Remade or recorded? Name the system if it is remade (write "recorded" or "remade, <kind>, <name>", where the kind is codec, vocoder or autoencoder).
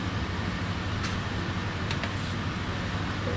recorded